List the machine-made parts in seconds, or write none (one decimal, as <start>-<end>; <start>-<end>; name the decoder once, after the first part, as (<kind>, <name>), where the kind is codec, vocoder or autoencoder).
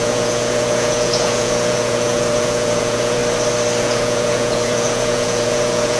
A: 0.0-3.2 (vocoder, Vocos); 3.8-6.0